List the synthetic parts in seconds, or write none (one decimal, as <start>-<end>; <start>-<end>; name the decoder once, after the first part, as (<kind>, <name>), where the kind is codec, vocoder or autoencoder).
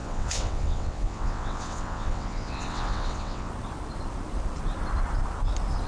0.0-3.5 (vocoder, WaveNeXt)